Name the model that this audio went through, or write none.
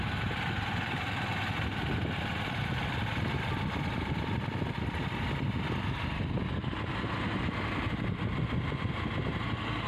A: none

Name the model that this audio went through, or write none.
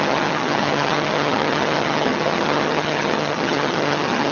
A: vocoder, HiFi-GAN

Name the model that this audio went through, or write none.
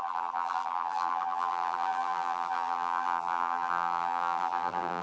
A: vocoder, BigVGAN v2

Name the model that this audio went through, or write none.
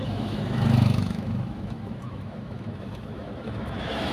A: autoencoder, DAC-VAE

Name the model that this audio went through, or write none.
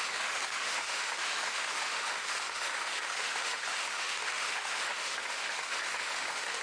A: autoencoder, DAC-VAE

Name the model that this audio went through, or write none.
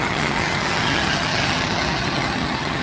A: vocoder, HiFi-GAN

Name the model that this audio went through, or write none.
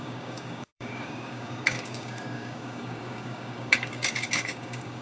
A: codec, DAC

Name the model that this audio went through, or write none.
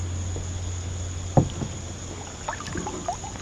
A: none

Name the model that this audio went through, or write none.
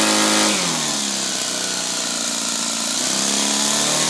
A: none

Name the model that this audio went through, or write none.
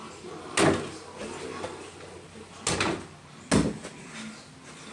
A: none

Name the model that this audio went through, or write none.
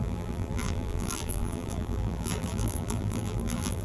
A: vocoder, BigVGAN v2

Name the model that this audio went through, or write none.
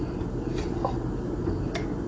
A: none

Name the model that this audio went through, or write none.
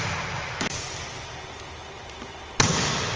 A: none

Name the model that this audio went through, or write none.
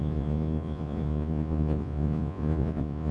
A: vocoder, Vocos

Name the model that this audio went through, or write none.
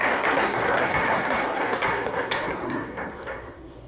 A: codec, SNAC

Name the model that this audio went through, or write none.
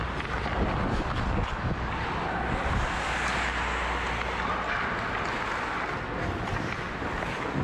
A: none